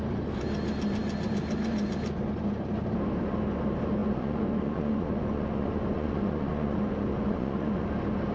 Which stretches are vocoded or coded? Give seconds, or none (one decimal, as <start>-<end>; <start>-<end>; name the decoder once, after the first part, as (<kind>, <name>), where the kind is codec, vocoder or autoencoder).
4.0-7.9 (vocoder, Vocos)